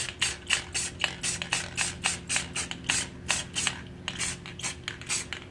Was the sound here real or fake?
real